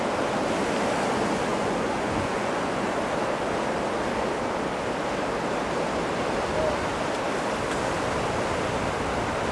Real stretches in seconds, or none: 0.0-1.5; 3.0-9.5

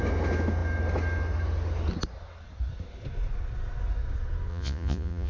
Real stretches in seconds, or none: 0.0-4.5